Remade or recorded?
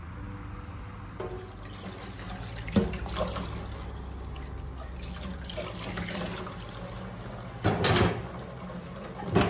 recorded